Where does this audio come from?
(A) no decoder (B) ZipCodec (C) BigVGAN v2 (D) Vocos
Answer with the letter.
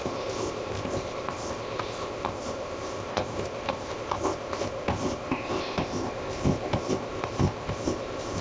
B